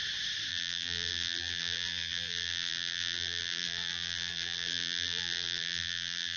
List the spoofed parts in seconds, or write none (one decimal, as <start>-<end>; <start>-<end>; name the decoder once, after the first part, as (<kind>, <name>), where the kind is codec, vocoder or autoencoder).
0.5-6.4 (vocoder, BigVGAN v2)

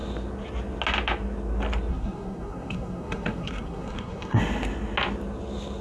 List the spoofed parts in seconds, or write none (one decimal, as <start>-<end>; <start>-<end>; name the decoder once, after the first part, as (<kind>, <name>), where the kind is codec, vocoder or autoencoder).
1.9-4.4 (codec, SNAC)